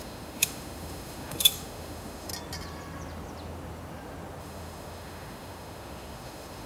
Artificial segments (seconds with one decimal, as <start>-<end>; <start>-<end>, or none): 0.0-2.3; 4.4-6.7